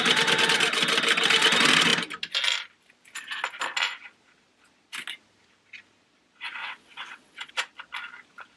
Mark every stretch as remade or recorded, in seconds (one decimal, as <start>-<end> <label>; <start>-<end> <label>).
0.0-6.6 recorded; 6.6-7.5 remade; 7.5-8.6 recorded